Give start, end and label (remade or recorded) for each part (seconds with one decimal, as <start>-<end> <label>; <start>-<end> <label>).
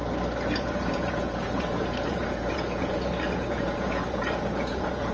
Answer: 0.0-0.6 recorded; 0.6-5.1 remade